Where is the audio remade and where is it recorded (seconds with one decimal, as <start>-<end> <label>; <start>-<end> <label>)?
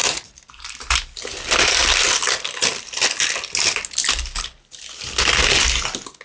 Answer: 0.0-6.2 recorded